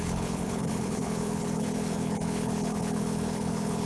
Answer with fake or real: fake